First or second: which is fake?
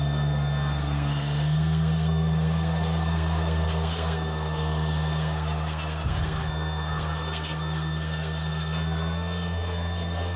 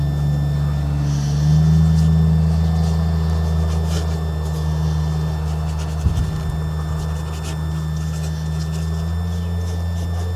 first